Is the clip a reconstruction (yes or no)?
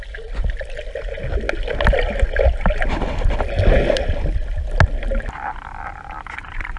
no